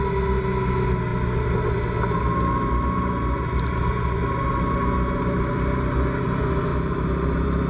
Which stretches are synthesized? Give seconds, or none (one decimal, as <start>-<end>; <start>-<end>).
6.7-7.7